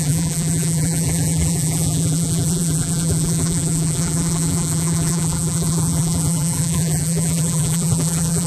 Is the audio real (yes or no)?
no